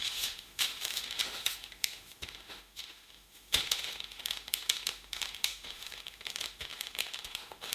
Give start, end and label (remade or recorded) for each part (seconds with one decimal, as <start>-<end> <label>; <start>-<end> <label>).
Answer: 0.0-7.7 remade